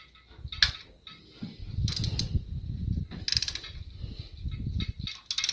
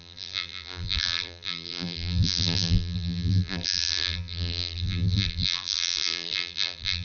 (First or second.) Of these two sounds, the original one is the first